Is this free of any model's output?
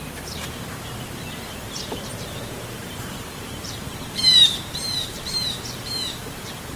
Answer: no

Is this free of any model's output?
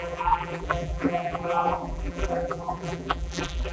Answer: no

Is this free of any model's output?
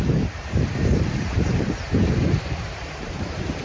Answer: no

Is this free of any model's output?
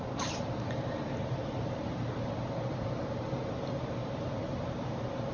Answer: no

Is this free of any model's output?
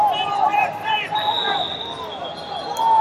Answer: yes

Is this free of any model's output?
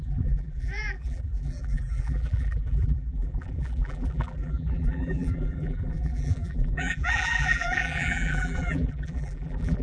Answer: no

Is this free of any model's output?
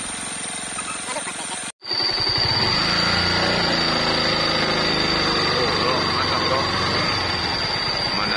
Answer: yes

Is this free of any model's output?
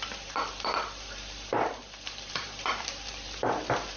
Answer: no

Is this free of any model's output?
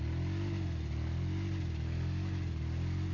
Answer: yes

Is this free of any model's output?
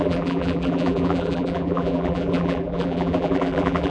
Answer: no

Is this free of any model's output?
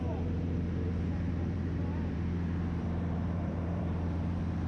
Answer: no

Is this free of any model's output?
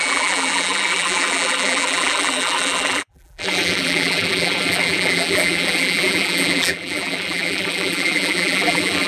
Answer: no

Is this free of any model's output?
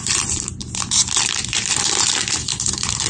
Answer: no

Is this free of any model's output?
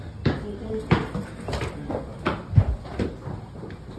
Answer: yes